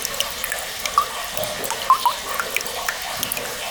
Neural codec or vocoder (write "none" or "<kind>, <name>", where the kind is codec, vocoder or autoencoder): none